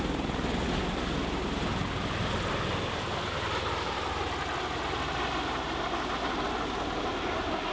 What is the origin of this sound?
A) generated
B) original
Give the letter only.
B